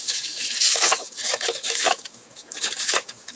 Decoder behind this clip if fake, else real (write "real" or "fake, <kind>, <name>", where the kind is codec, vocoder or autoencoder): fake, codec, DAC